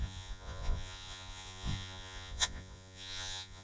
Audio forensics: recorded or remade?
remade